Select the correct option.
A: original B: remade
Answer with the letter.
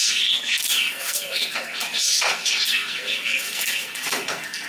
B